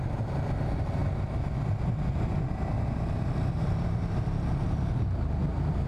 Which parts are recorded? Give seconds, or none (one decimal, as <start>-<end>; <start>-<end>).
0.0-5.9